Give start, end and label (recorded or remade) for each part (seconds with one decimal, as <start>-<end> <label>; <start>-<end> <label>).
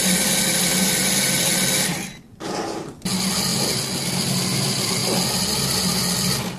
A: 0.0-6.6 recorded